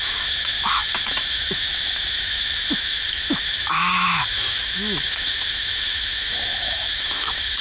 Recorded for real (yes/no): no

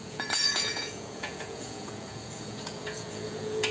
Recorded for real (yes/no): no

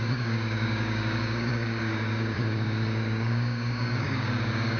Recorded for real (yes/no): no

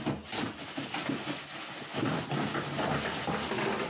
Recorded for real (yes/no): yes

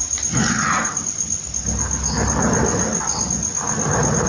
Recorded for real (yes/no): yes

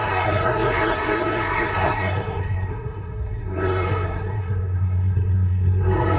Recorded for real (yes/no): no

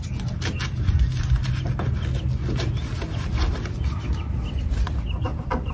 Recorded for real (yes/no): yes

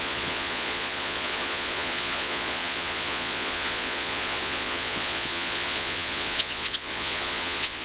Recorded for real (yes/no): no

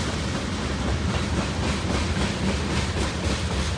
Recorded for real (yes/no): yes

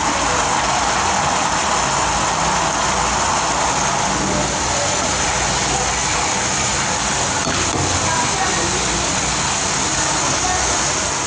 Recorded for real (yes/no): yes